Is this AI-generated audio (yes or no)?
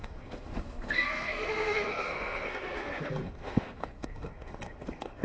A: yes